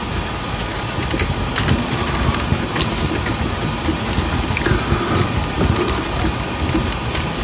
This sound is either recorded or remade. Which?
recorded